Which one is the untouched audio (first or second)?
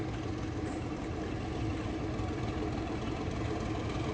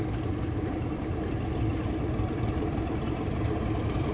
first